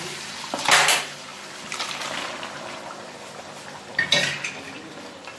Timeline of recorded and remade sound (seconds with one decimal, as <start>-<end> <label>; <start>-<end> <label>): 0.0-5.4 recorded